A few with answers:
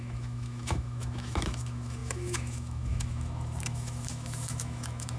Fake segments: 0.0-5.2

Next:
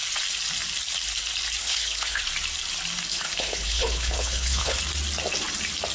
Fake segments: 1.6-2.2; 3.1-4.8

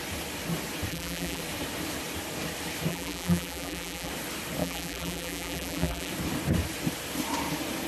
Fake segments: 0.9-1.4; 2.9-4.1; 4.6-6.1